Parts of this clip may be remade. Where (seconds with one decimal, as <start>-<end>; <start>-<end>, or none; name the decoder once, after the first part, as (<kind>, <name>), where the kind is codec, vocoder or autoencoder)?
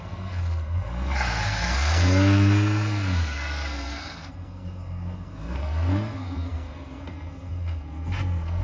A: 0.0-8.6 (codec, SNAC)